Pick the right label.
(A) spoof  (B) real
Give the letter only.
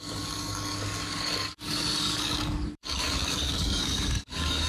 A